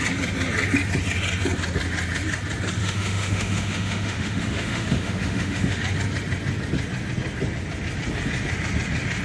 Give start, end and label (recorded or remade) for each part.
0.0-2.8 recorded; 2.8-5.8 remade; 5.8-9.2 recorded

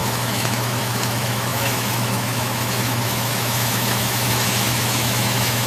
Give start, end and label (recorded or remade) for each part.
0.0-5.7 remade

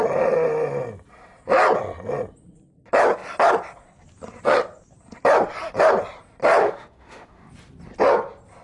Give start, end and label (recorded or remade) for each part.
0.0-6.6 recorded; 6.6-7.5 remade; 7.5-8.6 recorded

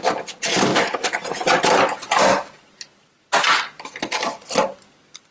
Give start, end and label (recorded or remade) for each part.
0.0-5.3 recorded